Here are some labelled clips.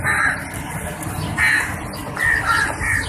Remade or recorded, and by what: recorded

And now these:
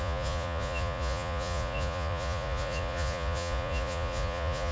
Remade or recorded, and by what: remade, vocoder, Vocos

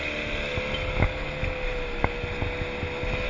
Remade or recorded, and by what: recorded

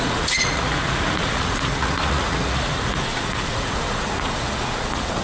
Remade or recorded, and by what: remade, vocoder, Vocos